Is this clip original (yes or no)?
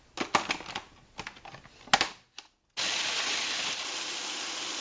yes